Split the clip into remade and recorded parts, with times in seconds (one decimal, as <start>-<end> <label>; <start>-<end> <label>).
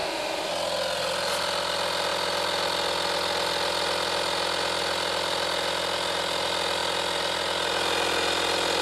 0.0-0.5 remade; 0.5-8.8 recorded